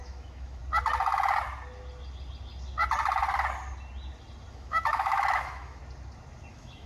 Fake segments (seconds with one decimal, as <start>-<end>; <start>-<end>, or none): 0.0-0.6; 4.5-5.8; 6.5-6.9